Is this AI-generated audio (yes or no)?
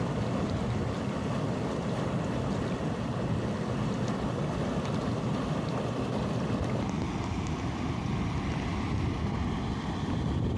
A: no